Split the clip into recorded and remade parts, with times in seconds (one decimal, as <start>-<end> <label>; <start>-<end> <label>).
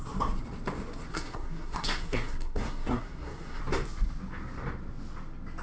0.0-1.1 recorded; 1.1-3.6 remade; 3.6-5.6 recorded